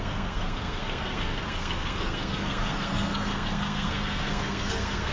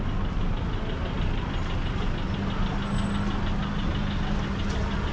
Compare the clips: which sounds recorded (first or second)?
second